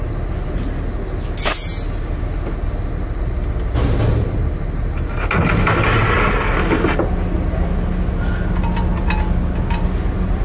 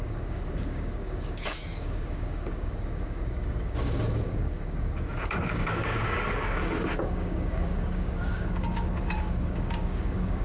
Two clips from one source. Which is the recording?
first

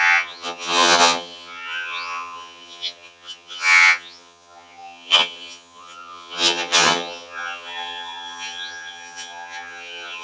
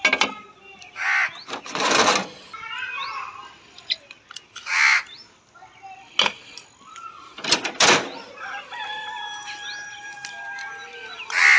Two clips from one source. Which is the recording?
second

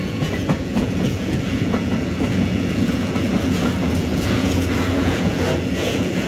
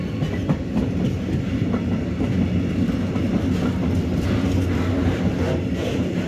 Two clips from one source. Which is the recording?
second